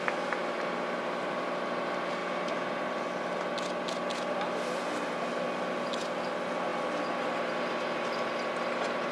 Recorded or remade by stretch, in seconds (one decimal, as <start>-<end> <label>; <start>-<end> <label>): 0.0-9.1 recorded